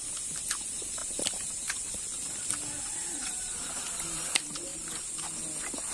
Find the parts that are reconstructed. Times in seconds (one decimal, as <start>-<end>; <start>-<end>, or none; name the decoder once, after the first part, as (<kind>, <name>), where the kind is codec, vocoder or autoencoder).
1.0-1.9 (vocoder, BigVGAN v2); 3.2-3.9; 4.7-5.2